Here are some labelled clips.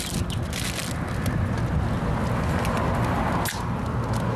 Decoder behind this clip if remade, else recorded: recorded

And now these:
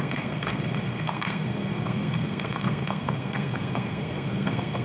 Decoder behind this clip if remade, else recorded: remade, codec, SNAC